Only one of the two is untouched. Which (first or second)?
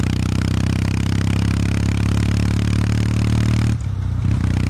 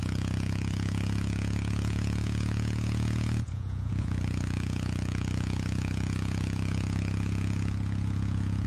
first